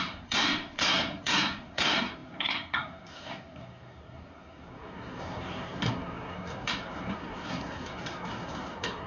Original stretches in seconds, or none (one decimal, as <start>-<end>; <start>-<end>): none